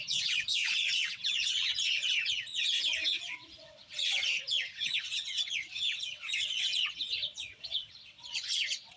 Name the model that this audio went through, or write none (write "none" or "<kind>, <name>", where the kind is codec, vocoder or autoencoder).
vocoder, WaveNeXt